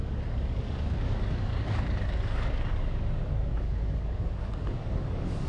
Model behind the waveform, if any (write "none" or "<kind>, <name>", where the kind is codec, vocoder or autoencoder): codec, DAC